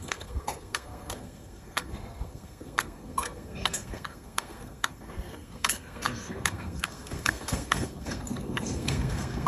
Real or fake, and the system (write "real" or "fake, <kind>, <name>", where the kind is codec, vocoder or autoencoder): fake, codec, SNAC